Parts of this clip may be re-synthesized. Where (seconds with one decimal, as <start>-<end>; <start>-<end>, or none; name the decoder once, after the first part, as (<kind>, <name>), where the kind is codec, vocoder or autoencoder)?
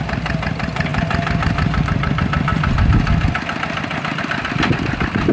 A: none